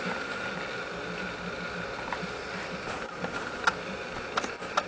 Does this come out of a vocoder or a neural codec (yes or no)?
no